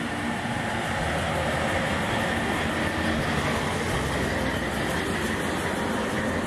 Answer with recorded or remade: recorded